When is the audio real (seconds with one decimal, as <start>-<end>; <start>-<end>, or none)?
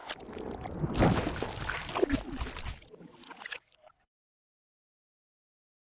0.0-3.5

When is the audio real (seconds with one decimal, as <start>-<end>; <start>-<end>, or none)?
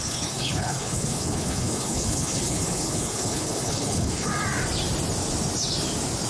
4.3-6.3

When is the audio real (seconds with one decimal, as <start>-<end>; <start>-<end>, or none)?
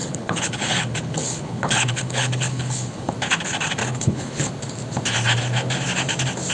3.1-3.8; 4.5-6.5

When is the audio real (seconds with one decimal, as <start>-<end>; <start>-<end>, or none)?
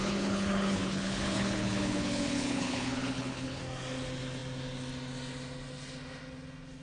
3.6-6.8